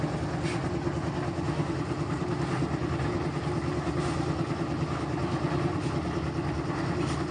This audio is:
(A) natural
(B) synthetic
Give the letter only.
A